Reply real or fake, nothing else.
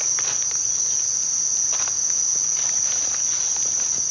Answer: real